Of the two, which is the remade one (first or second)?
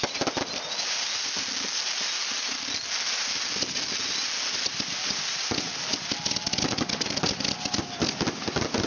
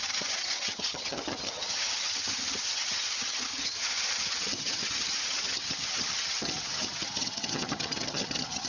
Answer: second